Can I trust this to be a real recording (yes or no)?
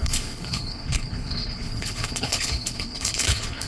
no